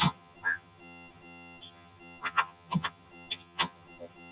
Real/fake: fake